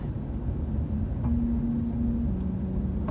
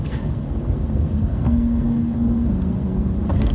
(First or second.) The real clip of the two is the first